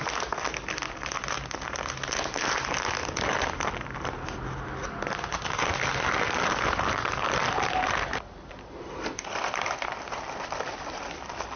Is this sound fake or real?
real